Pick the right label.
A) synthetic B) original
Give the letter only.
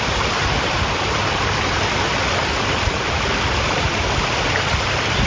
B